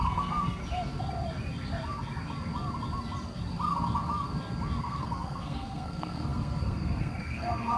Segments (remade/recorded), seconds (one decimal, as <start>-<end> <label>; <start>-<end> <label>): 0.0-0.6 remade; 0.6-4.8 recorded; 4.8-7.8 remade